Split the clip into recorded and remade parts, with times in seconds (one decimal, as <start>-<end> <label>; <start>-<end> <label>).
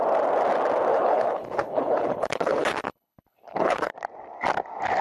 0.0-0.9 recorded; 0.9-3.9 remade; 3.9-5.0 recorded